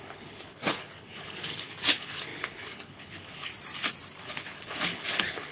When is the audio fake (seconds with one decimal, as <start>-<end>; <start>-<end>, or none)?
0.0-3.5; 4.2-5.5